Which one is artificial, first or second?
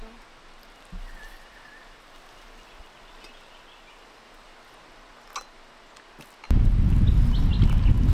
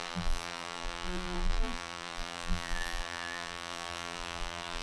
second